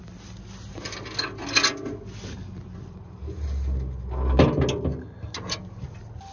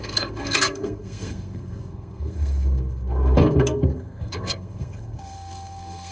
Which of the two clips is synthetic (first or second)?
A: second